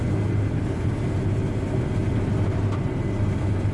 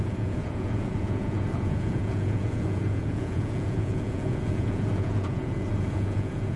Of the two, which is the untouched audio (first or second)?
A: first